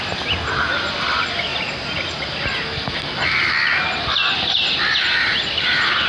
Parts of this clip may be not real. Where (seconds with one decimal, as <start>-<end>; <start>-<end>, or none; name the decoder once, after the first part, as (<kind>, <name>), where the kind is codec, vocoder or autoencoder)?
none